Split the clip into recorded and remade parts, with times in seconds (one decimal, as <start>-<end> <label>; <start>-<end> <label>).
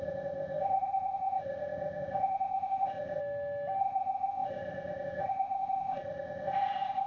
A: 0.0-3.2 remade; 3.2-3.8 recorded; 3.8-7.1 remade